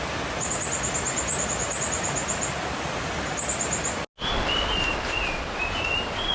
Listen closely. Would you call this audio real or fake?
real